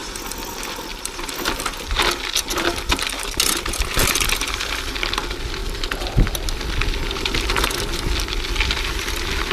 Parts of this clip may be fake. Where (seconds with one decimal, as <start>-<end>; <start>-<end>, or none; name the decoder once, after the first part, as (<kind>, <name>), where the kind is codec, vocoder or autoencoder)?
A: 0.9-1.5 (vocoder, BigVGAN v2); 4.0-4.9